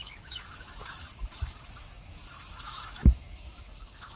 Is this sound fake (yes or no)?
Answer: yes